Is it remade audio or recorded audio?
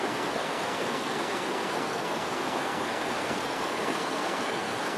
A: remade